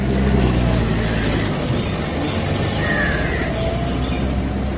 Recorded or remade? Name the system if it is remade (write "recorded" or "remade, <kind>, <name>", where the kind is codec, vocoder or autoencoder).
recorded